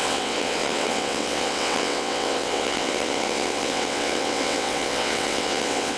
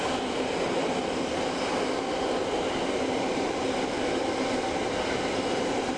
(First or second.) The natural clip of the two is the second